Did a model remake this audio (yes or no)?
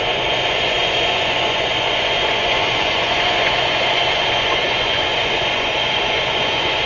yes